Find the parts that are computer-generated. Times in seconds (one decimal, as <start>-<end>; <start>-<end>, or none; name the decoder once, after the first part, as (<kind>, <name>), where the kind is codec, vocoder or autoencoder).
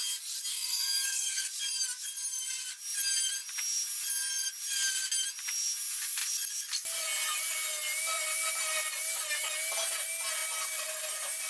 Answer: 0.5-1.5 (codec, SNAC)